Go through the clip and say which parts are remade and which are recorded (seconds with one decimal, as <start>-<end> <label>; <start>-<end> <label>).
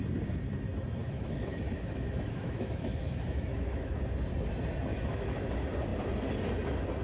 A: 0.0-1.0 recorded; 1.0-4.0 remade; 4.0-4.9 recorded; 4.9-5.5 remade; 5.5-7.0 recorded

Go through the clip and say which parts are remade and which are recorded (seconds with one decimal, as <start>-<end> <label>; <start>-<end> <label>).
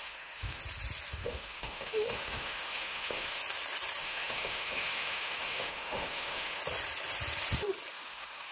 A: 0.0-0.6 remade; 0.6-1.1 recorded; 1.1-3.4 remade; 3.4-4.0 recorded; 4.0-6.6 remade; 6.6-7.9 recorded; 7.9-8.5 remade